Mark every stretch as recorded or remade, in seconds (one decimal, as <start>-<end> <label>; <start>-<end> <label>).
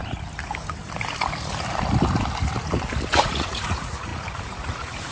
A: 0.0-3.1 recorded; 3.1-5.1 remade